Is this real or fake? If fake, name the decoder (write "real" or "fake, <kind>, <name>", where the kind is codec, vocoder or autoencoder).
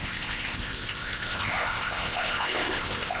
fake, codec, ZipCodec